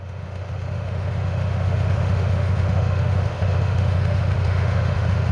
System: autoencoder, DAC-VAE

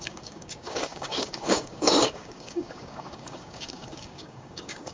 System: codec, DAC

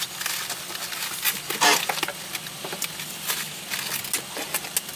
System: none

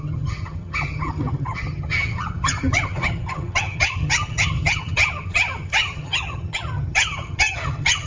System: vocoder, HiFi-GAN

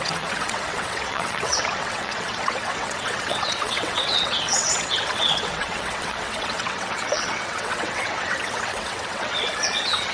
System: vocoder, WaveNeXt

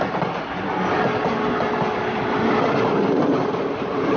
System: none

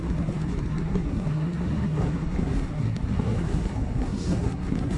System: codec, SNAC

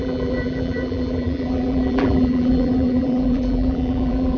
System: vocoder, BigVGAN v2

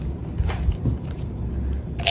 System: vocoder, BigVGAN v2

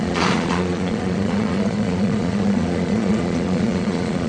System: vocoder, Vocos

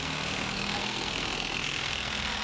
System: codec, SNAC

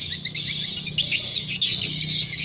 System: none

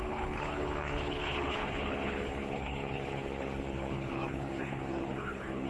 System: codec, HILCodec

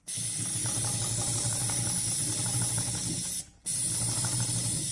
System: none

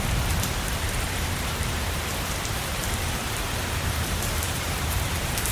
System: vocoder, BigVGAN v2